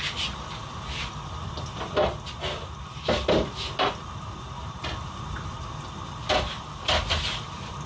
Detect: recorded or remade recorded